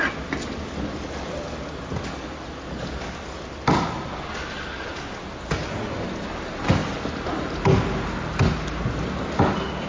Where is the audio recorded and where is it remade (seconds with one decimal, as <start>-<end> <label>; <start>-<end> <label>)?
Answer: 0.0-9.9 recorded